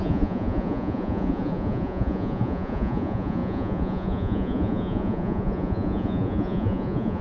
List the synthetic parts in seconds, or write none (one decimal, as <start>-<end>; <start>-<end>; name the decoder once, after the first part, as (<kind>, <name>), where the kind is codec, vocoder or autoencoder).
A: 0.0-7.2 (vocoder, Vocos)